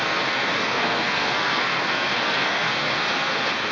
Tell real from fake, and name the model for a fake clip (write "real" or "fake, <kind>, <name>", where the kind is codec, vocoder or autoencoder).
fake, codec, SNAC